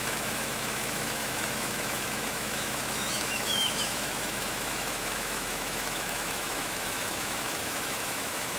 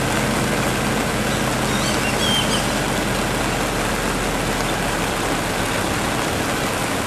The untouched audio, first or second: second